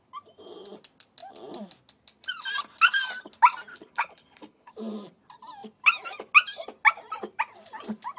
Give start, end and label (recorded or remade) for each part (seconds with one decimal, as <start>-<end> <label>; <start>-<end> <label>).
0.0-3.7 recorded; 3.7-4.7 remade; 4.7-8.2 recorded